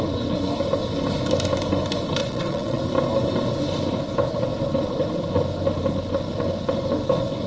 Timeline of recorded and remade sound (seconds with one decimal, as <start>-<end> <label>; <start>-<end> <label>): 0.0-2.2 recorded; 2.2-2.8 remade; 2.8-7.5 recorded